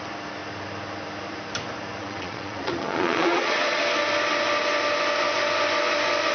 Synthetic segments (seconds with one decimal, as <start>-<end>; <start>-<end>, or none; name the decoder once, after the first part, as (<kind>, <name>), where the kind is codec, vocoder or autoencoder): 2.0-3.8 (vocoder, Vocos)